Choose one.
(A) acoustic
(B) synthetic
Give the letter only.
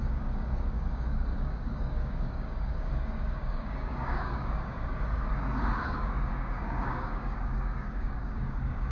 B